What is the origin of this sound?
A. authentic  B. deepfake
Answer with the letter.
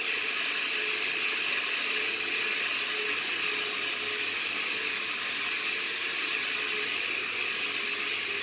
A